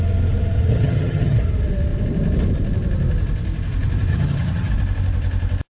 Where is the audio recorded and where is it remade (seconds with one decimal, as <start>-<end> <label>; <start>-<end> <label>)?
0.0-0.7 recorded; 0.7-1.4 remade; 1.4-4.1 recorded; 4.1-4.7 remade; 4.7-5.7 recorded